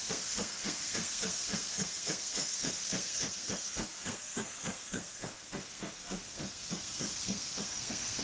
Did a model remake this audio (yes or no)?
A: yes